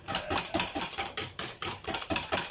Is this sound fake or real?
fake